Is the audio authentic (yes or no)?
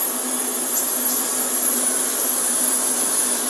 yes